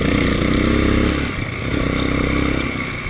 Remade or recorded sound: recorded